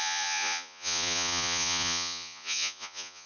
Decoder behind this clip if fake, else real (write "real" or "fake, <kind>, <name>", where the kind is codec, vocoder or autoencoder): fake, vocoder, Vocos